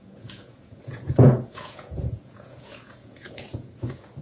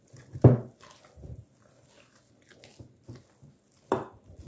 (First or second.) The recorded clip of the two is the second